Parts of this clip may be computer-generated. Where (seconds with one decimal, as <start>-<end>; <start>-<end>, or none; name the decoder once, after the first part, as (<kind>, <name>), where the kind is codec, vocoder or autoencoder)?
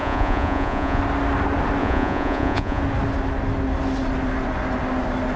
0.0-1.0 (vocoder, Vocos); 1.8-2.8